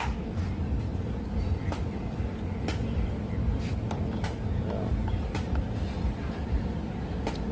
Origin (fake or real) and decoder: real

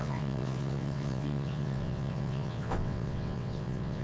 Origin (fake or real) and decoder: fake, vocoder, WaveNeXt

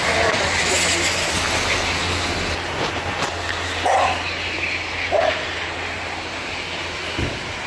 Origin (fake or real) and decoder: real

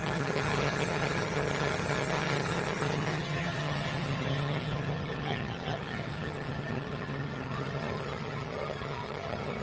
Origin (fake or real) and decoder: fake, vocoder, HiFi-GAN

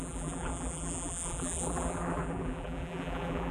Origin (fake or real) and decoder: fake, vocoder, BigVGAN v2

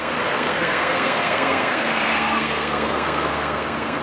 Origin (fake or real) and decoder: fake, codec, SNAC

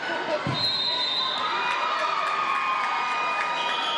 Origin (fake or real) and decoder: real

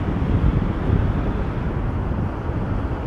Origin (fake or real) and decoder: real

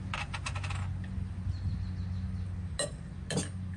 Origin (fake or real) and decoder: real